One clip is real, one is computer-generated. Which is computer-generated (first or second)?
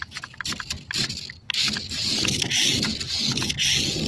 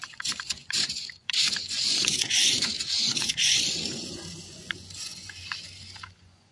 second